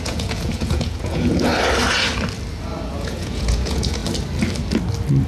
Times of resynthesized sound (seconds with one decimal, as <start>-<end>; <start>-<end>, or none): 0.0-1.5; 2.9-4.0

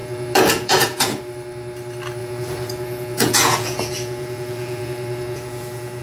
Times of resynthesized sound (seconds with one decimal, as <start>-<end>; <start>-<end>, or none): 0.0-1.2; 2.2-6.0

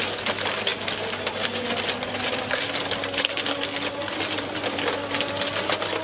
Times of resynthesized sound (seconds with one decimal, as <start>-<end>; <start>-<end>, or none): none

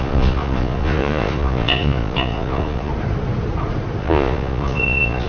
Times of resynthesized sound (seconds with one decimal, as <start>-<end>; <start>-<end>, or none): 0.0-2.9; 4.0-5.3

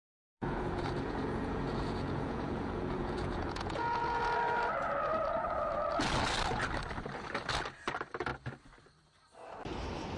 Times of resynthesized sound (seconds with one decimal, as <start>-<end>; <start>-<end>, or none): 0.0-4.2

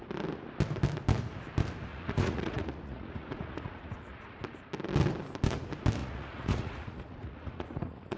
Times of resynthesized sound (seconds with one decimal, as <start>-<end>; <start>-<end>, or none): 1.9-4.4; 6.0-8.2